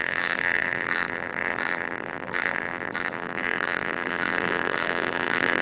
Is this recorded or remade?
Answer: remade